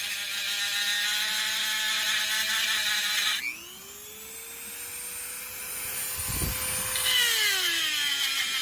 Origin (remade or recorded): recorded